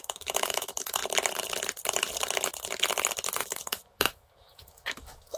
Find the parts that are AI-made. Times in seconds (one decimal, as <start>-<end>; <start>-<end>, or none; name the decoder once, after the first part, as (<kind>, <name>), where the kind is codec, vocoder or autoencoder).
0.0-1.0 (autoencoder, DAC-VAE); 3.4-5.4